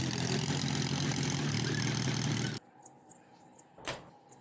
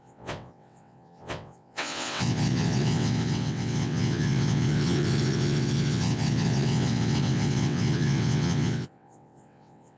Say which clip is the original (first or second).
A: first